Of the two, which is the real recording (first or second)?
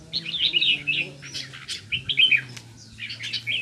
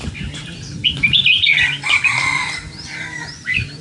first